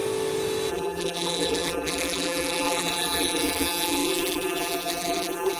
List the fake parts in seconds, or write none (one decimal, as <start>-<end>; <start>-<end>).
0.7-5.6